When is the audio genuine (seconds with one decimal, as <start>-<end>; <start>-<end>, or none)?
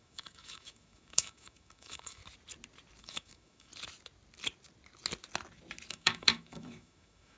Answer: 2.2-3.0; 3.7-5.9